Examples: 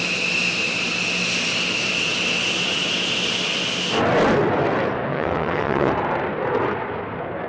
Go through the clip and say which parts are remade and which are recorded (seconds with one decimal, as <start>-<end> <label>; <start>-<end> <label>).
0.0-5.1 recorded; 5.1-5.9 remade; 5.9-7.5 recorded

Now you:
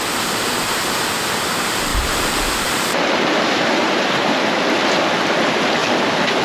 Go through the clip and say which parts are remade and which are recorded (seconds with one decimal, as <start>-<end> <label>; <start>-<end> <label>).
0.0-1.9 recorded; 1.9-4.3 remade; 4.3-5.8 recorded; 5.8-6.4 remade

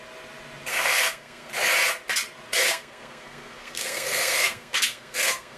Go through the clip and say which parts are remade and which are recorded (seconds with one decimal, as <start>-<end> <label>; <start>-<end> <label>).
0.0-0.7 recorded; 0.7-1.5 remade; 1.5-2.7 recorded; 2.7-5.6 remade

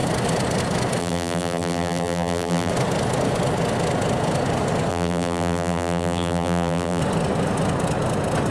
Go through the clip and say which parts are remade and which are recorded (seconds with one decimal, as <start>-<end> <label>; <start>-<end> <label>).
0.0-1.0 recorded; 1.0-2.7 remade; 2.7-4.9 recorded; 4.9-7.0 remade; 7.0-8.5 recorded

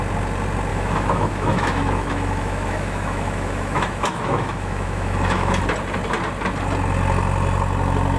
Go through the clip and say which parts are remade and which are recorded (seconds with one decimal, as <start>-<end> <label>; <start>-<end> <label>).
0.0-0.7 recorded; 0.7-5.6 remade; 5.6-8.2 recorded

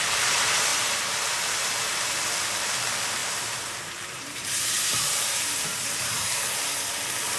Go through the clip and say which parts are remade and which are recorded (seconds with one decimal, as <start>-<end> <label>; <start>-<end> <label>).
0.0-0.7 recorded; 0.7-2.2 remade; 2.2-3.2 recorded; 3.2-6.4 remade; 6.4-7.4 recorded